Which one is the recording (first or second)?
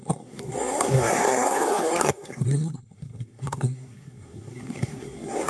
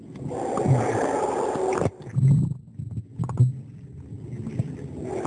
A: second